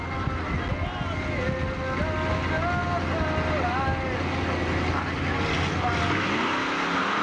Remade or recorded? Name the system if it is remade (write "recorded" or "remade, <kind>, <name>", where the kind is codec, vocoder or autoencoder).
recorded